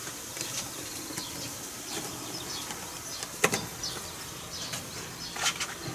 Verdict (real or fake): real